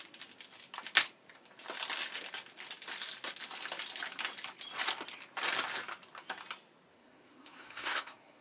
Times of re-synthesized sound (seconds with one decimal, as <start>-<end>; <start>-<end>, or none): 7.0-8.4